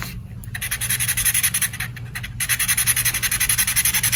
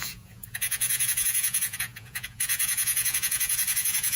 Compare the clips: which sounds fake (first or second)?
second